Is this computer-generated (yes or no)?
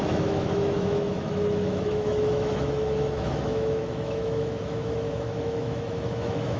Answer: yes